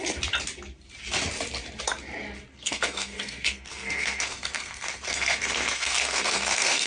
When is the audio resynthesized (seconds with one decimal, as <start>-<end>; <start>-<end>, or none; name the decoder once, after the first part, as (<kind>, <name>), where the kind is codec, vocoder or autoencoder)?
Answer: 2.5-6.9 (codec, SNAC)